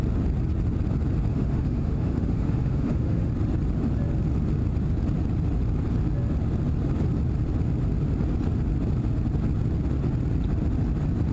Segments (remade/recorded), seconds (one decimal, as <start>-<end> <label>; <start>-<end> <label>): 0.0-1.3 recorded; 1.3-3.3 remade; 3.3-11.3 recorded